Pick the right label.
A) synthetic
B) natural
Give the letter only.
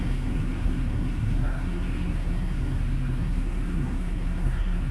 A